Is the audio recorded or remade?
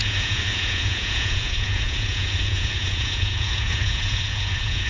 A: remade